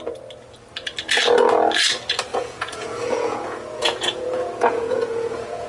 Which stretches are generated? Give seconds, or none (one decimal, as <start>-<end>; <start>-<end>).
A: 2.3-5.7